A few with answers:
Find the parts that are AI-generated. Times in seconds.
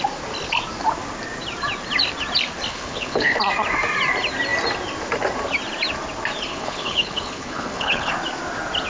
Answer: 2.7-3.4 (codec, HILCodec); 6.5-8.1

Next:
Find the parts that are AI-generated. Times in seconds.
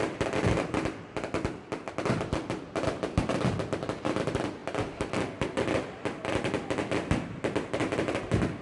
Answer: none